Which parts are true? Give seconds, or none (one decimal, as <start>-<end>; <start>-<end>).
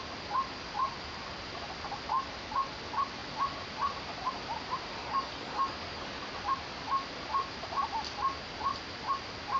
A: 0.0-5.0; 6.2-9.6